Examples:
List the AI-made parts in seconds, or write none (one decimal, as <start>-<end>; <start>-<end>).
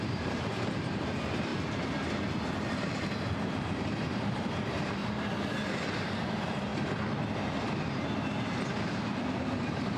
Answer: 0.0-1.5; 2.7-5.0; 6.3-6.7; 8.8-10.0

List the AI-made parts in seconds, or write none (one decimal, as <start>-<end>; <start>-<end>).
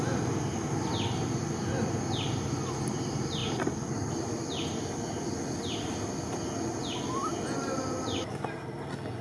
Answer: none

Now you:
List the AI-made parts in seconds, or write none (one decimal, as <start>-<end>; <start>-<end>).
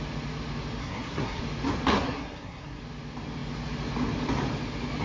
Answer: 0.8-1.4; 1.9-2.8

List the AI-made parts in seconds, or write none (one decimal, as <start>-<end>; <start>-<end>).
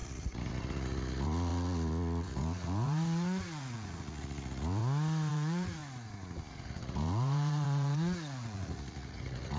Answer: 0.0-4.8; 5.3-5.8; 6.5-9.6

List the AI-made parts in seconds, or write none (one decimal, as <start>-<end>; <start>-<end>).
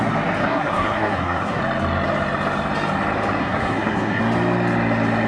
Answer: 0.4-1.6; 3.4-4.2